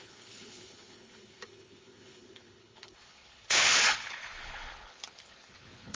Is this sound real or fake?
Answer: fake